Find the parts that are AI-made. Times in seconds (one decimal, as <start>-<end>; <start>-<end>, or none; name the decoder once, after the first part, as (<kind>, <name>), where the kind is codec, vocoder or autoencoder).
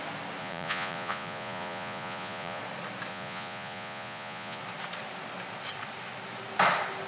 0.4-2.6 (vocoder, Vocos); 3.1-4.6